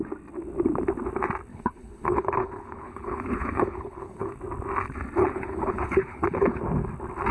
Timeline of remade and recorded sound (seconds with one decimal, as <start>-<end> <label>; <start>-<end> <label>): 0.0-1.5 recorded; 1.5-4.3 remade; 4.3-5.2 recorded; 5.2-6.6 remade; 6.6-7.3 recorded